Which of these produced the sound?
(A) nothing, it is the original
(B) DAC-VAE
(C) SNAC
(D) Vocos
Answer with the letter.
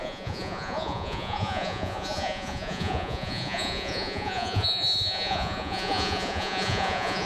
D